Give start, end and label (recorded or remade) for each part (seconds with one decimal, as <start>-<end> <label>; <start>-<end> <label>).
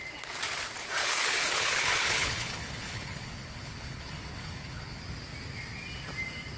0.0-1.0 recorded; 1.0-5.0 remade; 5.0-6.6 recorded